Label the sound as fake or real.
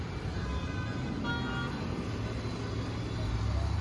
real